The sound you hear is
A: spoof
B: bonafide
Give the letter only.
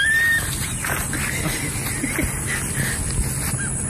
B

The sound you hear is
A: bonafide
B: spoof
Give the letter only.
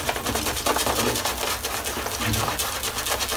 A